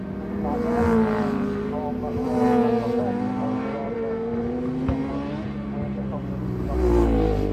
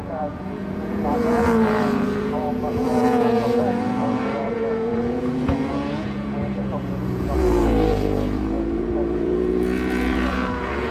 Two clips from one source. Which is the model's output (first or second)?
second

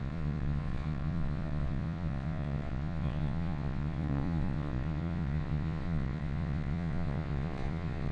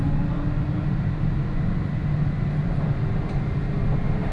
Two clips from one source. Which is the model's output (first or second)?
first